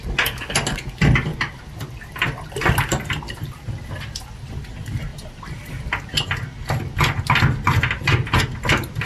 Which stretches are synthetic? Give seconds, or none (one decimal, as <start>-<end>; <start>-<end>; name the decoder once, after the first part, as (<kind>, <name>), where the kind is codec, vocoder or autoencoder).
5.1-5.8 (vocoder, BigVGAN v2)